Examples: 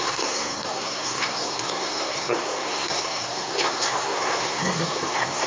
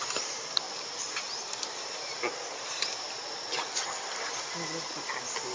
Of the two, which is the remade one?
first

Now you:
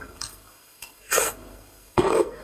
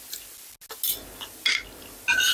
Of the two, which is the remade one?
first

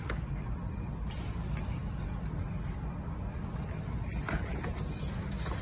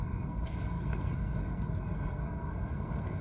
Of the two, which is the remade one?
second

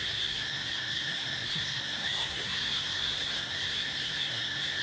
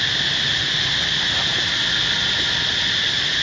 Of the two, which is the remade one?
first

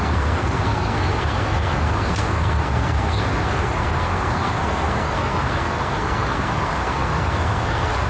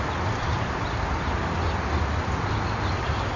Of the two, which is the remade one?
first